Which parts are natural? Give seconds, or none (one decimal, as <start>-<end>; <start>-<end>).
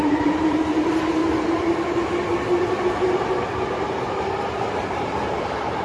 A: 1.2-4.7